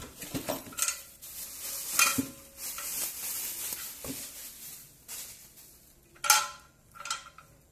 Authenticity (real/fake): real